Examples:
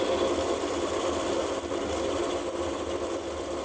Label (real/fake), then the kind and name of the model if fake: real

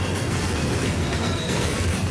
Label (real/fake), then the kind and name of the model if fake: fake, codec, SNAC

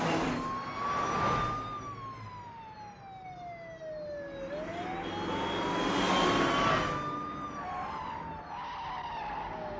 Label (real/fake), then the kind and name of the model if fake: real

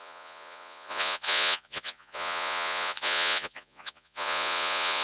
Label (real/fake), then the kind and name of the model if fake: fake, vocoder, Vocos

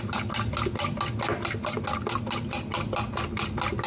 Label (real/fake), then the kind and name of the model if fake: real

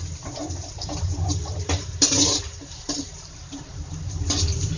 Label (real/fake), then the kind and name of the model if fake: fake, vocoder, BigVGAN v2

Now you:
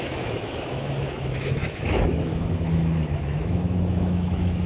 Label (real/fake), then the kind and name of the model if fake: fake, autoencoder, DAC-VAE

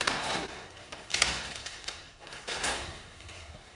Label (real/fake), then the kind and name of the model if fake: fake, codec, SNAC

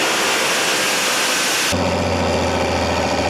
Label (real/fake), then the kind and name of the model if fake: real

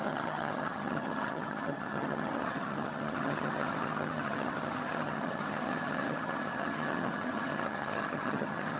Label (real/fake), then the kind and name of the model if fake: fake, vocoder, HiFi-GAN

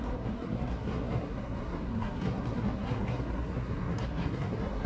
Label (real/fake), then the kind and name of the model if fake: fake, codec, SNAC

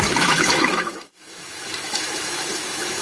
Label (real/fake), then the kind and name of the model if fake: fake, autoencoder, DAC-VAE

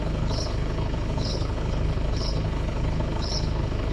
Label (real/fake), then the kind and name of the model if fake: fake, codec, HILCodec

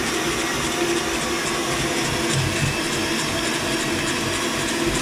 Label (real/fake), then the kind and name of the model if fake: real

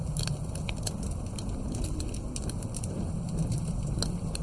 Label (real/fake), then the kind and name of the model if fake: real